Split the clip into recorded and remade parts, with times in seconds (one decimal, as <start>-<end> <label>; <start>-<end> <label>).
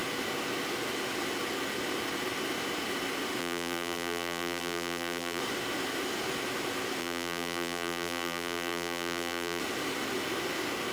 0.0-3.4 recorded; 3.4-5.4 remade; 5.4-7.0 recorded; 7.0-9.6 remade; 9.6-10.9 recorded